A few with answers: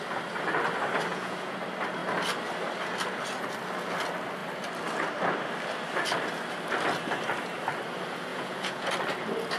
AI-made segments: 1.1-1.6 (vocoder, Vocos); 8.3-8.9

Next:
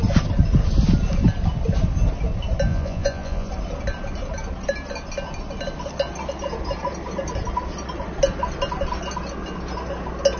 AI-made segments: 2.7-3.5 (vocoder, Vocos)

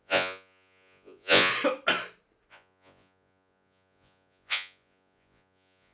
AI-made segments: 0.0-1.5 (vocoder, Vocos); 2.5-5.9

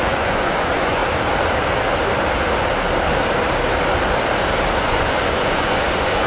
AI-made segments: 0.0-1.0 (vocoder, Vocos); 4.8-6.3

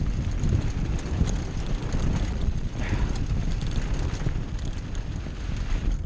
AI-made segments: 2.3-2.8 (vocoder, Vocos)